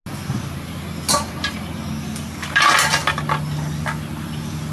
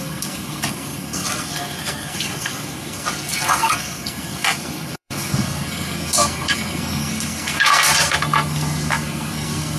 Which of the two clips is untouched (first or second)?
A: first